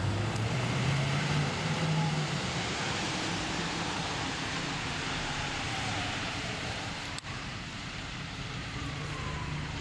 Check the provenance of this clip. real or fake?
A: fake